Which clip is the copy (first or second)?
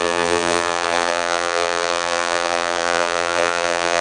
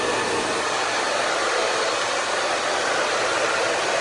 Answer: first